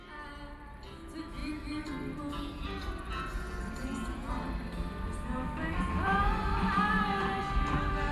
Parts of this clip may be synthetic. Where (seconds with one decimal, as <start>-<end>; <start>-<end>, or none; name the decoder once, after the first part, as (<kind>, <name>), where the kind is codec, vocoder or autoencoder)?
none